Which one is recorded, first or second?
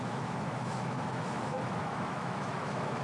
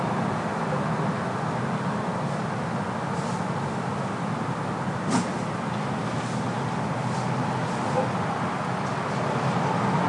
second